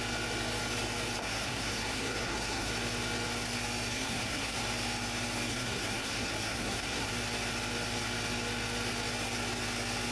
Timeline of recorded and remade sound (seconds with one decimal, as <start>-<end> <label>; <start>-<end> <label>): 0.0-1.2 recorded; 1.2-2.7 remade; 2.7-3.9 recorded; 3.9-4.6 remade; 4.6-5.5 recorded; 5.5-7.1 remade; 7.1-10.1 recorded